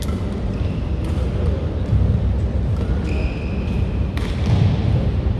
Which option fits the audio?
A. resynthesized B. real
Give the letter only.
B